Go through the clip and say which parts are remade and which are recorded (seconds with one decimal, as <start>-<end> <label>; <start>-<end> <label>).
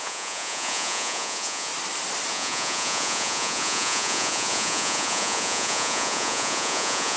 0.0-1.7 remade; 1.7-2.3 recorded; 2.3-7.2 remade